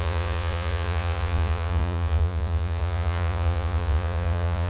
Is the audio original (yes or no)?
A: no